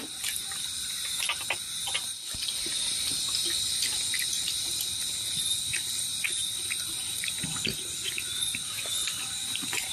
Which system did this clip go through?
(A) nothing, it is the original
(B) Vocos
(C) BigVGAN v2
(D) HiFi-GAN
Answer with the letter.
A